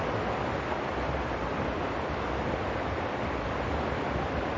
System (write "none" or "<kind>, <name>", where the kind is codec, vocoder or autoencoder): none